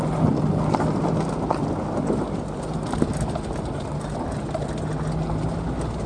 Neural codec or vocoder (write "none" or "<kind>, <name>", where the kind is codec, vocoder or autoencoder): none